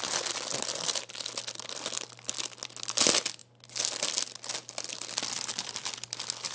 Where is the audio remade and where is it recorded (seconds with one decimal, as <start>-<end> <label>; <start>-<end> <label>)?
0.0-6.5 recorded